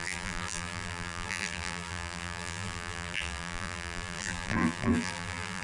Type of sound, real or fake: fake